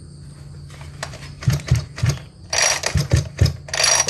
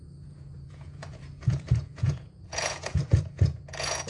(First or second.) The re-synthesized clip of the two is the second